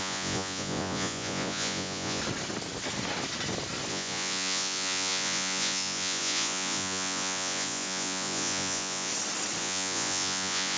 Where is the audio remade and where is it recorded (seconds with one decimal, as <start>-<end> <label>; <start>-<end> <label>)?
0.0-2.2 remade; 2.2-3.9 recorded; 3.9-9.1 remade; 9.1-9.6 recorded; 9.6-10.8 remade